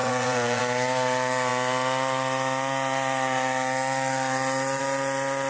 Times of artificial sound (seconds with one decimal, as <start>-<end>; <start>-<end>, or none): 0.0-0.6